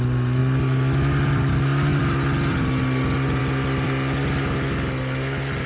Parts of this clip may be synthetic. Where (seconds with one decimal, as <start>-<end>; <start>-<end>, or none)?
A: none